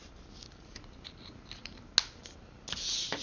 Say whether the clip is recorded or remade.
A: recorded